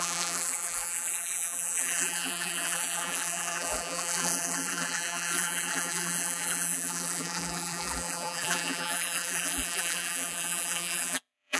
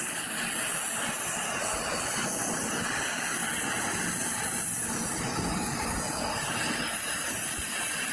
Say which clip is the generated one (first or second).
first